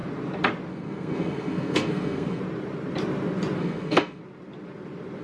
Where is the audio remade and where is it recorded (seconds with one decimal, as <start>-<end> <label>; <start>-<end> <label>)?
0.0-0.7 recorded; 0.7-2.4 remade; 2.4-3.6 recorded; 3.6-4.2 remade; 4.2-5.2 recorded

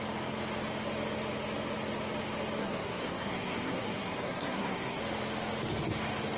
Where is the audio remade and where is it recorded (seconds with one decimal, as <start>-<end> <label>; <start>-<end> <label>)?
0.0-2.6 recorded; 2.6-5.0 remade; 5.0-6.4 recorded